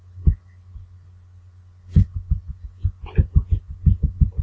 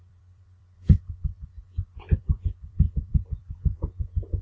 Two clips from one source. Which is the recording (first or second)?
first